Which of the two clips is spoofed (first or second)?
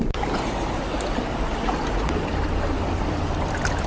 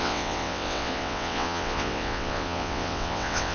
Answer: second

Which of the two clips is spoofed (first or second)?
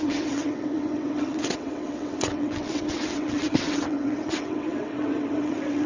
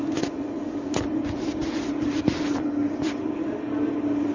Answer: first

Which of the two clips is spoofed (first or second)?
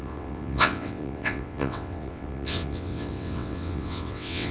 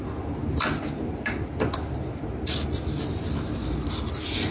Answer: first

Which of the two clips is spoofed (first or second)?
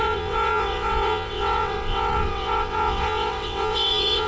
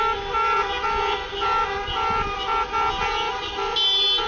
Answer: first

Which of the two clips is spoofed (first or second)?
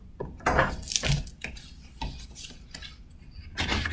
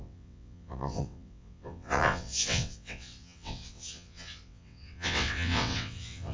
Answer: second